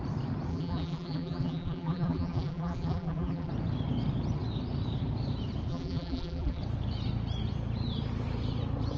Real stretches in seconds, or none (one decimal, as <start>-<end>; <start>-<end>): 0.0-0.5; 3.5-5.7; 6.6-9.0